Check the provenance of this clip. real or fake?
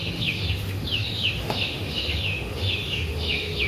fake